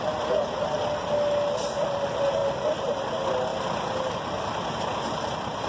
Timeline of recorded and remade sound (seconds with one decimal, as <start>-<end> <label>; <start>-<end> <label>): 0.0-5.7 recorded